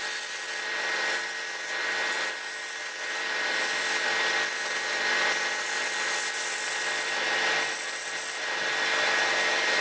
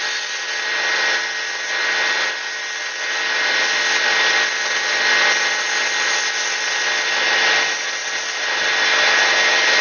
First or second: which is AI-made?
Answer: first